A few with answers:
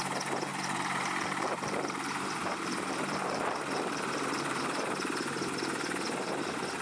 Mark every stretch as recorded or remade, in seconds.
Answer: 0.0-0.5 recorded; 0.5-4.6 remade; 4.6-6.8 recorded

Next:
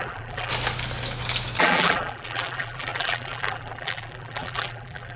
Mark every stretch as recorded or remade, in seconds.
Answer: 0.0-0.5 remade; 0.5-1.6 recorded; 1.6-5.2 remade

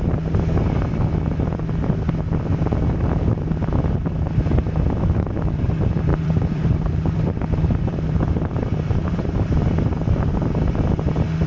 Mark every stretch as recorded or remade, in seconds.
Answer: 0.0-6.1 recorded; 6.1-10.9 remade; 10.9-11.5 recorded

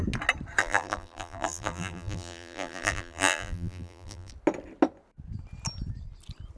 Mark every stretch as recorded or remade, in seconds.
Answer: 0.0-0.6 recorded; 0.6-4.3 remade; 4.3-6.6 recorded

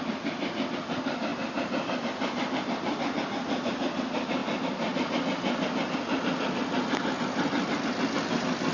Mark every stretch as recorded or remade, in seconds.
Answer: 0.0-1.3 recorded; 1.3-2.8 remade; 2.8-8.7 recorded

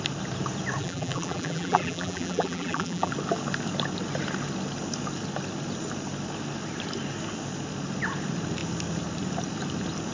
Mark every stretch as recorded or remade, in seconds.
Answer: 0.0-0.8 recorded; 0.8-3.1 remade; 3.1-10.1 recorded

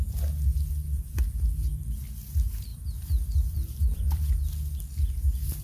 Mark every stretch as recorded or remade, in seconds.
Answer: 0.0-2.7 recorded; 2.7-4.3 remade; 4.3-5.6 recorded